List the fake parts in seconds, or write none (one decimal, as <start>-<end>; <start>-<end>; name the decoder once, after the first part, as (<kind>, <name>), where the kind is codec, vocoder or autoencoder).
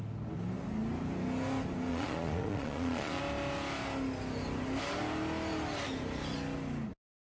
1.9-3.2 (vocoder, Vocos)